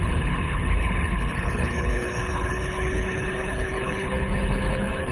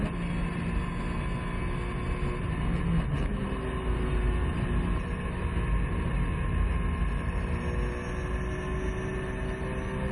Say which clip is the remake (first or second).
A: first